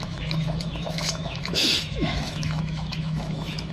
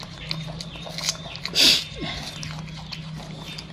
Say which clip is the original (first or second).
second